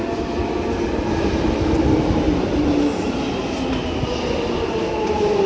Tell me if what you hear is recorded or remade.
recorded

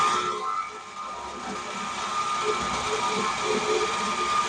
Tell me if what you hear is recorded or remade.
recorded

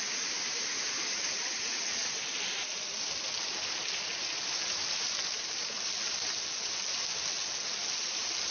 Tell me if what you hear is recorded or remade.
recorded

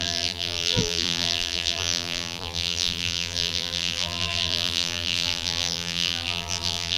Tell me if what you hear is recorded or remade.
remade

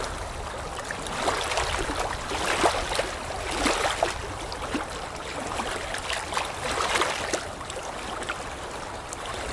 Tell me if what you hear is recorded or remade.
recorded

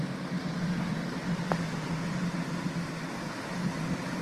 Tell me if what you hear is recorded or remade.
remade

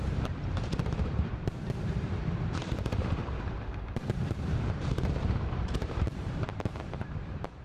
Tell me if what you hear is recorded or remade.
remade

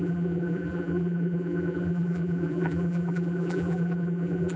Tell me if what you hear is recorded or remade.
remade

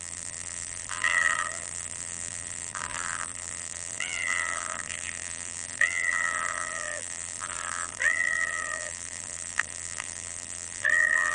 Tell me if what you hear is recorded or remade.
remade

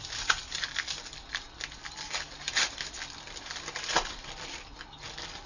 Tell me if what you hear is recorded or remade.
remade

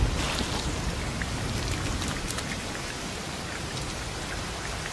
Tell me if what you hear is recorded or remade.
recorded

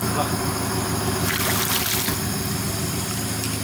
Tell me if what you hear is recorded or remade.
recorded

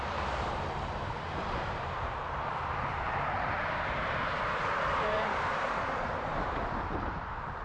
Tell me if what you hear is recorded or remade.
remade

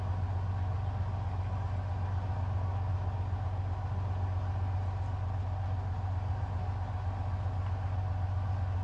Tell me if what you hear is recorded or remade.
recorded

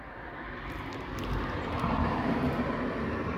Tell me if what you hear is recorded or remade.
recorded